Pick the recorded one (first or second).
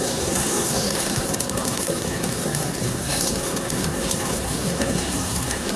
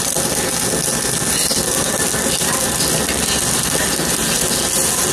second